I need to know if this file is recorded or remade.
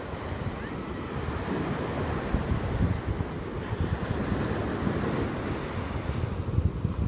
recorded